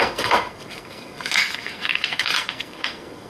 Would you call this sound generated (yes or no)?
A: yes